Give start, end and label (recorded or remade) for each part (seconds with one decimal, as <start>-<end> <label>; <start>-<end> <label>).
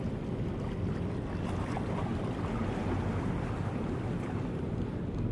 0.0-5.3 recorded